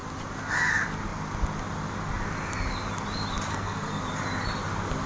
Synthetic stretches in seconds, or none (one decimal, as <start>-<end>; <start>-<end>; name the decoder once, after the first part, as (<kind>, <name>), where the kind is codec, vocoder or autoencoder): 3.5-4.0 (codec, SNAC)